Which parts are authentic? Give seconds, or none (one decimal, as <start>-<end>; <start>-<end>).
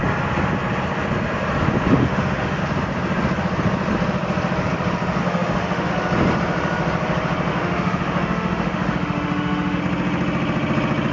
0.0-2.0; 2.6-5.2; 5.9-7.5; 9.8-11.1